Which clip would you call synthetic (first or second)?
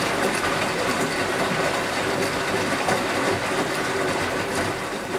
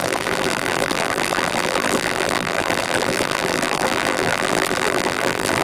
second